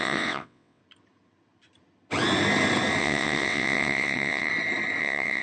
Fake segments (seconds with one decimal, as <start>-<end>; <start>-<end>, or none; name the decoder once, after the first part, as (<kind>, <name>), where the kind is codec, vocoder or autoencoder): 0.0-0.8 (vocoder, WaveNeXt); 3.0-4.5; 5.0-5.4